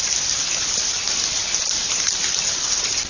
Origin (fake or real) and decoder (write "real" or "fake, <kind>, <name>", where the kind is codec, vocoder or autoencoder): real